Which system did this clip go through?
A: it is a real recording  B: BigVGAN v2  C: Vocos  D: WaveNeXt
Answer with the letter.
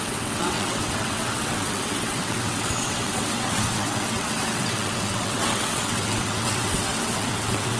D